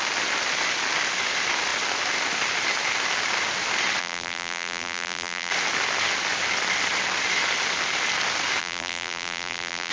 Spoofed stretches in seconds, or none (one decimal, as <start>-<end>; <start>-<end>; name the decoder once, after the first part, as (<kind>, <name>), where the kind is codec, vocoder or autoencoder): 4.0-5.5 (vocoder, BigVGAN v2); 8.6-9.9